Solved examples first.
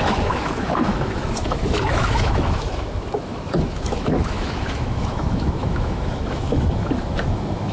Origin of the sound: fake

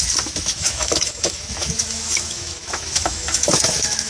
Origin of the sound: fake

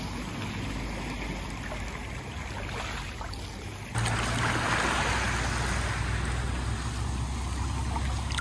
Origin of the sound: real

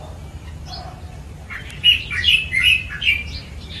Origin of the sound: real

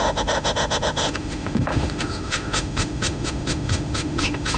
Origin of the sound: fake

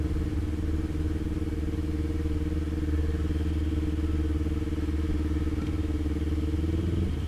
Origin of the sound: real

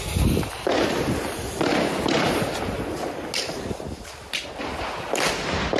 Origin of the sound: real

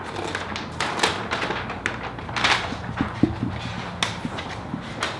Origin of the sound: real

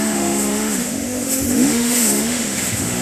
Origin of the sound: fake